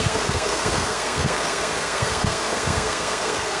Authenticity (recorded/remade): remade